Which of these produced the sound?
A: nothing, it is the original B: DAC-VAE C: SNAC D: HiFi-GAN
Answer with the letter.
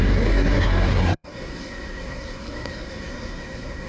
C